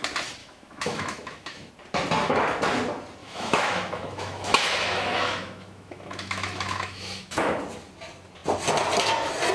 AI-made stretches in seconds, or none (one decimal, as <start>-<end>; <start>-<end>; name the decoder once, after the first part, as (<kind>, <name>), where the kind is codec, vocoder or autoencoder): 0.4-1.7 (autoencoder, DAC-VAE); 3.2-7.6